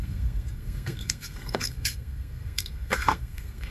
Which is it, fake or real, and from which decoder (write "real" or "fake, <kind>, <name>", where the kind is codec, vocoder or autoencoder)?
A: fake, codec, SNAC